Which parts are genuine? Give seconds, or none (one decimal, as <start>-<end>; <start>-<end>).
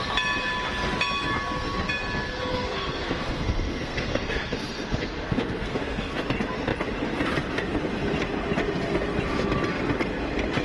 0.0-2.5; 6.2-10.6